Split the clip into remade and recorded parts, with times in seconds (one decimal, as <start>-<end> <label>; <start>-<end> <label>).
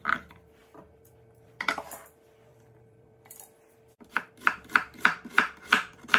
0.0-6.2 remade